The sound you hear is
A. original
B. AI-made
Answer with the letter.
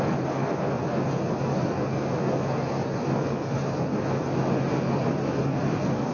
A